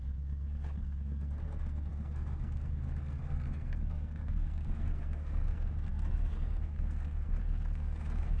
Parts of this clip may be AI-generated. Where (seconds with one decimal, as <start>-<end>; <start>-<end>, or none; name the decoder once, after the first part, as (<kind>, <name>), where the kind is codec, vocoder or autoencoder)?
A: 0.0-8.4 (codec, SNAC)

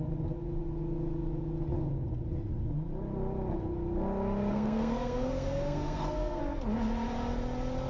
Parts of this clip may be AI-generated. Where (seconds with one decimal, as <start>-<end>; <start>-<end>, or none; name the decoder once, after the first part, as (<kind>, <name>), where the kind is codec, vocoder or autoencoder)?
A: 4.5-6.4 (codec, SNAC)

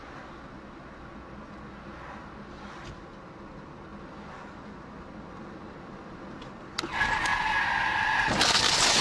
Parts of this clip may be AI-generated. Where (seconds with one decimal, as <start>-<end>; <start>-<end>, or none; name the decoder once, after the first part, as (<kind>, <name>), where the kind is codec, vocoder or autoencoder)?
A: none

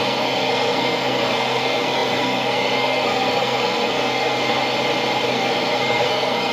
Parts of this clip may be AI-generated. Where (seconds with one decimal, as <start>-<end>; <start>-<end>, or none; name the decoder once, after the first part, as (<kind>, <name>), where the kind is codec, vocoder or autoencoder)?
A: 0.0-4.6 (codec, SNAC); 5.3-6.5

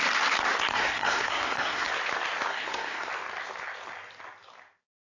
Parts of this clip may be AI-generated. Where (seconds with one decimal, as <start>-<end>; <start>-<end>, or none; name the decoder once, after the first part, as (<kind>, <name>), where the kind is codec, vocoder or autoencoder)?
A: 0.7-1.9 (codec, SNAC); 2.5-3.1

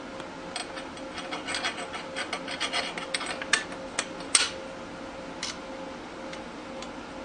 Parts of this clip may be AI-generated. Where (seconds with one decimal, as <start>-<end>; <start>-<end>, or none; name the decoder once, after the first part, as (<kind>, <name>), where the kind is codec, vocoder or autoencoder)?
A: none

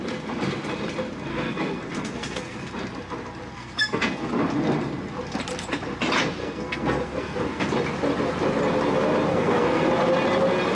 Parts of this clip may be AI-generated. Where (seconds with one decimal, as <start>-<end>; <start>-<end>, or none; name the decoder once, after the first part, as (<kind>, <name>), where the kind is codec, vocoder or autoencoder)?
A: 1.3-2.7 (codec, SNAC); 3.5-4.3; 6.4-7.7; 9.3-9.9